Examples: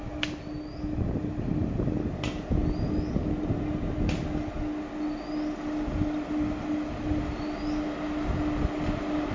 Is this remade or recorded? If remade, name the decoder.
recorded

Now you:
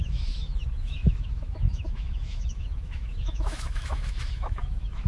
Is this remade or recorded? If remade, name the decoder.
remade, autoencoder, DAC-VAE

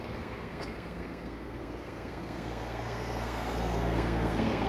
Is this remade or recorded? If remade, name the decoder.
remade, codec, SNAC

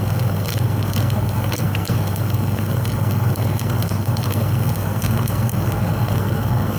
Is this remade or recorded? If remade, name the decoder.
remade, codec, SNAC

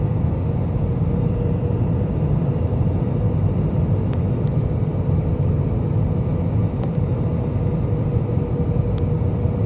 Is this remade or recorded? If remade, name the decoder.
recorded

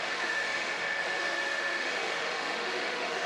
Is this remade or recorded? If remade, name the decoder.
remade, autoencoder, DAC-VAE